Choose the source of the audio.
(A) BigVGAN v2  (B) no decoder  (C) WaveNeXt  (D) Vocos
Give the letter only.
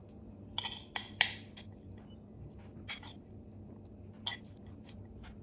B